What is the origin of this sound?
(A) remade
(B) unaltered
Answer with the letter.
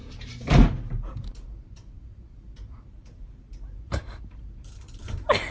A